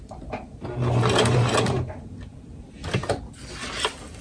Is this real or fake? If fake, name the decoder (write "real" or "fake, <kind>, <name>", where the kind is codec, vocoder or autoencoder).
real